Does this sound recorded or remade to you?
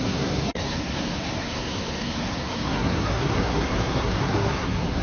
remade